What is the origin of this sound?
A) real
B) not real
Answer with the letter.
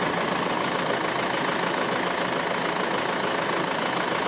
A